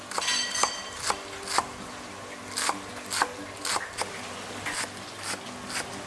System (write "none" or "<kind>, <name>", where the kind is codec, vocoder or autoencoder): none